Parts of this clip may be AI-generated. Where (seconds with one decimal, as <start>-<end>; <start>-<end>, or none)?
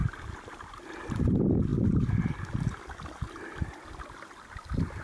none